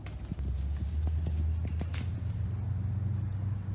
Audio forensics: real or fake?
real